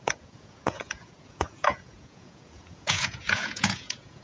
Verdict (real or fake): fake